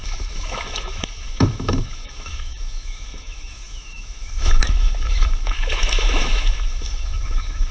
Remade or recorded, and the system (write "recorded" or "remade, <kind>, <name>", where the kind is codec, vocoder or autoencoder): remade, autoencoder, DAC-VAE